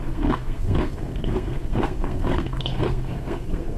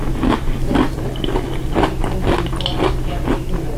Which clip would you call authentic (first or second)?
second